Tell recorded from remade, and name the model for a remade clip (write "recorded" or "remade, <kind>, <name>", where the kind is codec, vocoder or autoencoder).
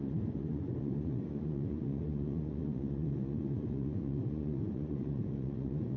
remade, vocoder, Vocos